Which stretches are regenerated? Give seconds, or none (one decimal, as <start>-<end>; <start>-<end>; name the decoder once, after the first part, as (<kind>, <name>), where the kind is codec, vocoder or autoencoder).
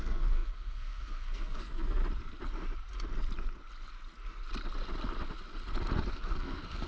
0.0-2.0 (codec, SNAC); 6.1-6.9